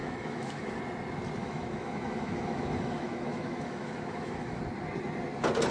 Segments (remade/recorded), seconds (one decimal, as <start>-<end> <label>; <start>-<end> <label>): 0.0-0.8 remade; 0.8-1.4 recorded; 1.4-4.6 remade; 4.6-5.7 recorded

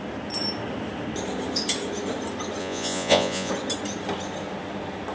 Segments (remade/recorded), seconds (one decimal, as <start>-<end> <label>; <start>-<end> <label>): 0.0-2.6 recorded; 2.6-3.5 remade; 3.5-5.1 recorded

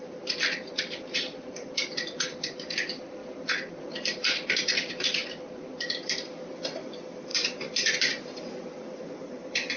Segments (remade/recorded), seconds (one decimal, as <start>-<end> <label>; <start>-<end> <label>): 0.0-9.8 remade

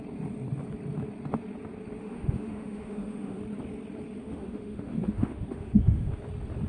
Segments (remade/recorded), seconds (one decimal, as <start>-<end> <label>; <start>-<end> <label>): 0.0-2.0 recorded; 2.0-3.4 remade; 3.4-4.2 recorded; 4.2-6.2 remade; 6.2-6.7 recorded

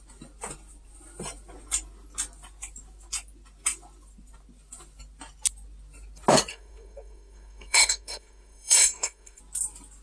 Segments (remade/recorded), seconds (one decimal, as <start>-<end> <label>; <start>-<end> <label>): 0.0-6.5 recorded; 6.5-9.4 remade; 9.4-10.0 recorded

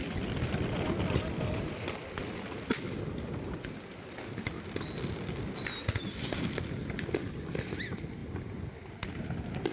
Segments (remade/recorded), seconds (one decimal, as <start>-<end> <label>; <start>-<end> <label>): 0.0-9.7 recorded

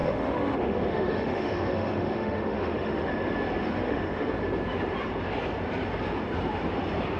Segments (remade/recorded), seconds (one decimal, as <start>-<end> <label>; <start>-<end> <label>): 0.0-3.1 remade; 3.1-3.6 recorded; 3.6-4.3 remade; 4.3-7.2 recorded

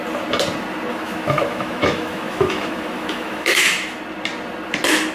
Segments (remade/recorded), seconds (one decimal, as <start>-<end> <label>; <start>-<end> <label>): 0.0-0.9 recorded; 0.9-4.0 remade; 4.0-5.1 recorded